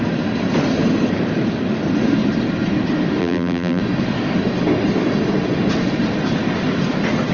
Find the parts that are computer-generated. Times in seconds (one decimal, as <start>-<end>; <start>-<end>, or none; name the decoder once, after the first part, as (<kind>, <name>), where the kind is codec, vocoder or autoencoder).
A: 3.2-3.8 (vocoder, BigVGAN v2)